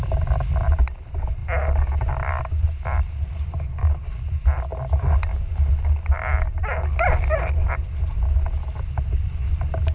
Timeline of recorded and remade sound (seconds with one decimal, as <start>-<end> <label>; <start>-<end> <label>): 0.0-9.9 recorded